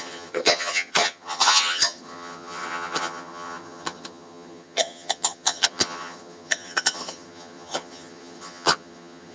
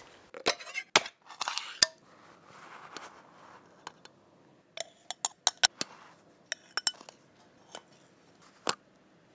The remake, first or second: first